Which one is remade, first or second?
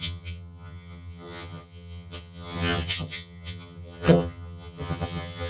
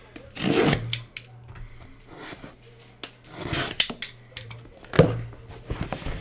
first